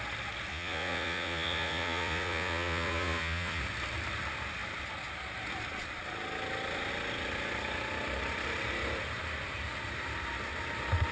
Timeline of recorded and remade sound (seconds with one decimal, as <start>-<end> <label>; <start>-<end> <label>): 0.0-0.5 recorded; 0.5-3.6 remade; 3.6-11.1 recorded